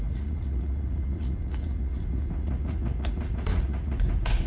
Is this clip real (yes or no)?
no